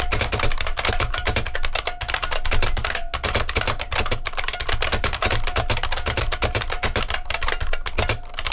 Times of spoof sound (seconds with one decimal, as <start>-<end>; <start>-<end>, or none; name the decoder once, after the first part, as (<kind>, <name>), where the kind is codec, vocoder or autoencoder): none